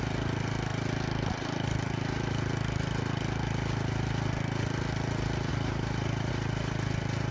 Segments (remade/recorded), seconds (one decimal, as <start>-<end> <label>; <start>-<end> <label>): 0.0-5.5 recorded; 5.5-6.3 remade; 6.3-7.3 recorded